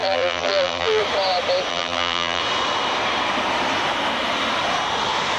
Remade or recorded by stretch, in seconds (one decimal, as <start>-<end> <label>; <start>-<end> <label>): 0.0-1.0 remade; 1.0-1.7 recorded; 1.7-2.4 remade; 2.4-5.4 recorded

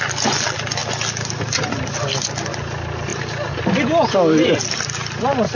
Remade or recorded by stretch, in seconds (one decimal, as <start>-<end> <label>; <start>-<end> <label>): 0.0-5.5 recorded

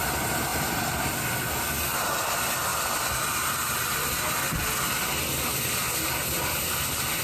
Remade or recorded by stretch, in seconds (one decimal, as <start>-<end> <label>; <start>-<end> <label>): 0.0-7.2 recorded

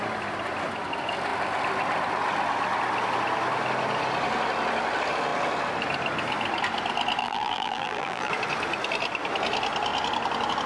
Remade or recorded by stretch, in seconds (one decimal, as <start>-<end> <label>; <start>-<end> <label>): 0.0-7.2 recorded; 7.2-8.3 remade; 8.3-10.7 recorded

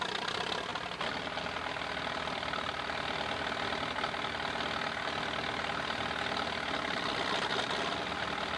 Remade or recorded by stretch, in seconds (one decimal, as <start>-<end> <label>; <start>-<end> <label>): 0.0-8.6 recorded

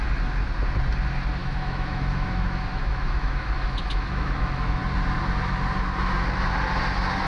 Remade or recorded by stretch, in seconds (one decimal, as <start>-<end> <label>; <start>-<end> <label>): 0.0-1.4 recorded; 1.4-4.8 remade; 4.8-7.3 recorded